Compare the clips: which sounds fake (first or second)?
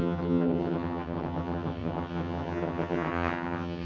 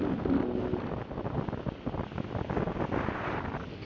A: first